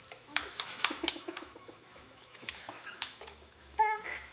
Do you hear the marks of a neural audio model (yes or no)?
yes